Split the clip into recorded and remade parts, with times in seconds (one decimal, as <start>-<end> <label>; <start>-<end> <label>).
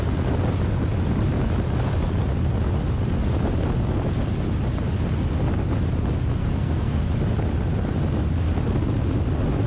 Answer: 0.0-6.4 recorded; 6.4-7.0 remade; 7.0-9.7 recorded